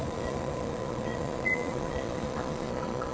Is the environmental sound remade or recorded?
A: remade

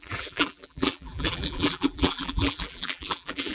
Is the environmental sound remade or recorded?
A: remade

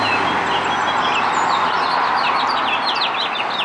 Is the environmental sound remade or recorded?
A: recorded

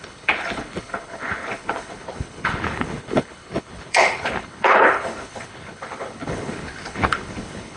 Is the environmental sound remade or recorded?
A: remade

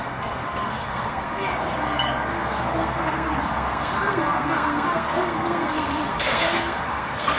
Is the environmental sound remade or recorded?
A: remade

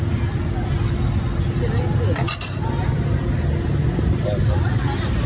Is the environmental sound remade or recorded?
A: recorded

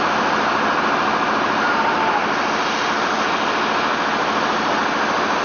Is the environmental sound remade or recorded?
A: recorded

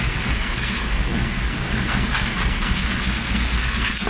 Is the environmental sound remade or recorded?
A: remade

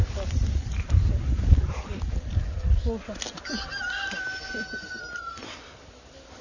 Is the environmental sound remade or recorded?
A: recorded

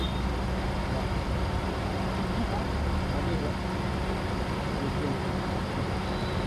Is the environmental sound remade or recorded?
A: recorded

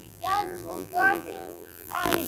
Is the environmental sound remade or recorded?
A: remade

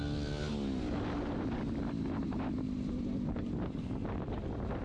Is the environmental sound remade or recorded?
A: recorded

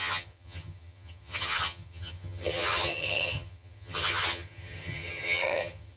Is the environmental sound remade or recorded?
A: remade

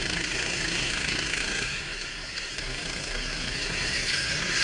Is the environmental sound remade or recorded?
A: remade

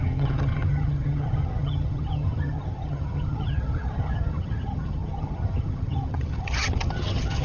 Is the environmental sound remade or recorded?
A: remade